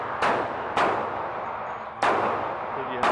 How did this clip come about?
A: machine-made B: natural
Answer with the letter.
B